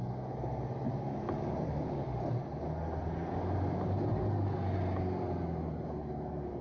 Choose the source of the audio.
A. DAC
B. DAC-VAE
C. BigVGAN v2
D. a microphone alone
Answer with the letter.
D